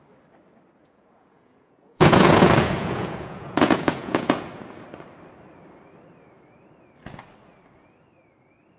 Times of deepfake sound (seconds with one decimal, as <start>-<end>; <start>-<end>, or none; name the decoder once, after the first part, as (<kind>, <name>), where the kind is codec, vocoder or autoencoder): 0.8-4.6 (vocoder, Vocos)